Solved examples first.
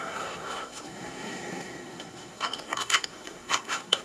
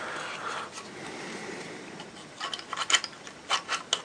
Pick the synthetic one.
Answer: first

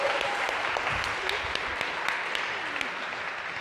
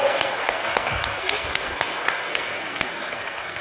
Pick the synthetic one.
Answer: second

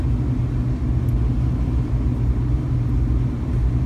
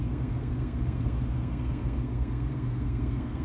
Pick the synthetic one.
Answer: second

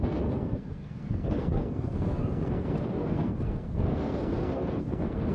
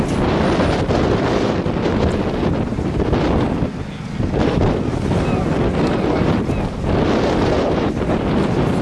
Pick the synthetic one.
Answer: first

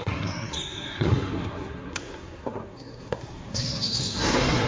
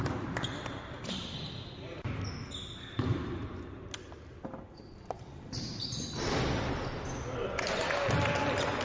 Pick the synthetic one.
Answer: first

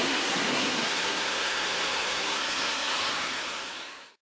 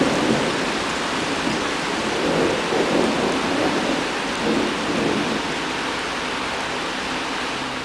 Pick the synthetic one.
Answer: first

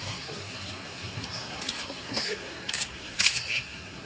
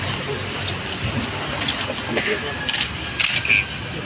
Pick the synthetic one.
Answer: first